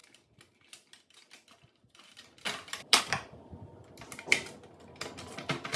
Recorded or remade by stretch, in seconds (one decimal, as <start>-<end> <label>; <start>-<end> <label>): 0.0-5.8 recorded